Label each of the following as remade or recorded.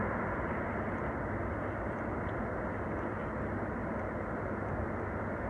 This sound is recorded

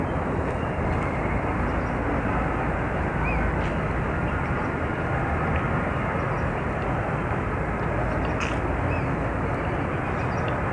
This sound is recorded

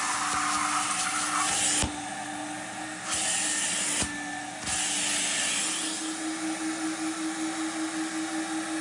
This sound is recorded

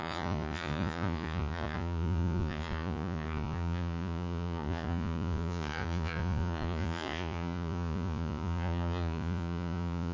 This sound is remade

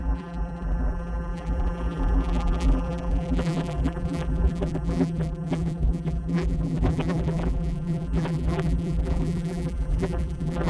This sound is remade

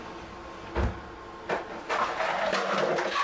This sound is recorded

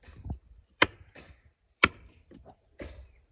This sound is remade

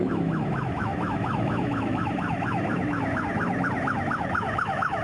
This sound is remade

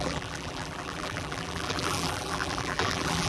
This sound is remade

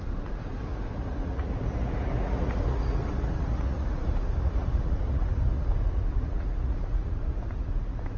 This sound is remade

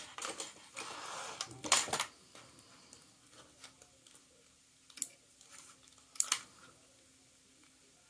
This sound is recorded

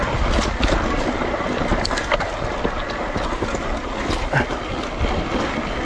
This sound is recorded